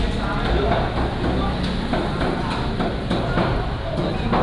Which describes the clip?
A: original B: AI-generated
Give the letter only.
A